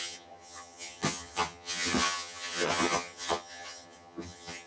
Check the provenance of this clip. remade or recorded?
remade